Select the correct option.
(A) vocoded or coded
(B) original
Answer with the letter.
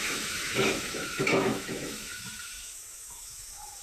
A